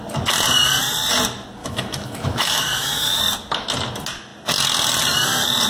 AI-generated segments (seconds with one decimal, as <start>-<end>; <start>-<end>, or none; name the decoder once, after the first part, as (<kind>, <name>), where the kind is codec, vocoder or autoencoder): 1.6-3.2 (autoencoder, DAC-VAE)